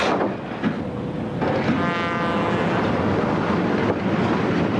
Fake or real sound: real